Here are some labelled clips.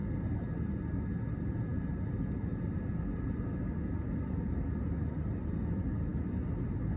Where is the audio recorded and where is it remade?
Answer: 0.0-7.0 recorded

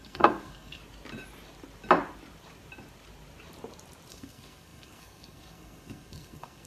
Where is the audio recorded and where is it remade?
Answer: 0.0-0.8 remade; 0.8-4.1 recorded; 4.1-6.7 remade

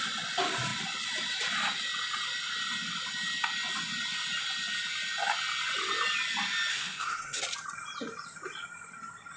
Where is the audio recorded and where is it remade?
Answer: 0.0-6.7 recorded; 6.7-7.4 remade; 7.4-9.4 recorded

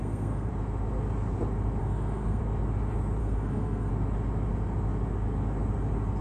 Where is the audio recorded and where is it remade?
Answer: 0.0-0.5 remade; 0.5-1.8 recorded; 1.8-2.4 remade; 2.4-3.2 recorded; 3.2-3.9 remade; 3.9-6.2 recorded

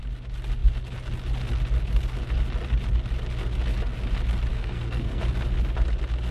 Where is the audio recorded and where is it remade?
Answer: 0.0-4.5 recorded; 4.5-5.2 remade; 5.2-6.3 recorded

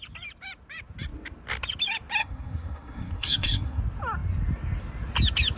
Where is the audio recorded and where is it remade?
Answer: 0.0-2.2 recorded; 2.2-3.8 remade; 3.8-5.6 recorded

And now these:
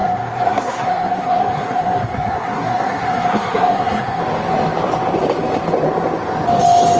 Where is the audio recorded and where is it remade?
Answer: 0.0-4.2 remade; 4.2-7.0 recorded